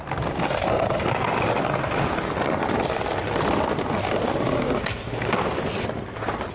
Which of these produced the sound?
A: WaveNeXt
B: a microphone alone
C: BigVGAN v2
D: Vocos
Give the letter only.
B